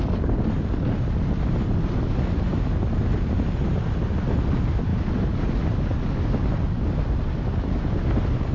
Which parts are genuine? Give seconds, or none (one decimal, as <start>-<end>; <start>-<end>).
0.0-8.5